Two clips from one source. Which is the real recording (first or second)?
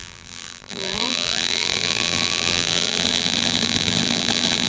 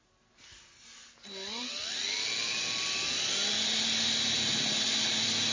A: second